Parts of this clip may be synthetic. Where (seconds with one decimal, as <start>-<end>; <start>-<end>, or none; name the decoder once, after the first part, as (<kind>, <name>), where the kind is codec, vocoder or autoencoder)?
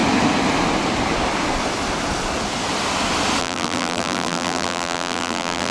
3.4-5.7 (vocoder, BigVGAN v2)